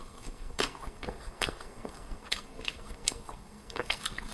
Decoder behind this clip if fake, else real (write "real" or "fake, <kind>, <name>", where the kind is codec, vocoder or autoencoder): fake, codec, SNAC